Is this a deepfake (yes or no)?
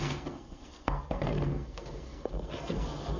yes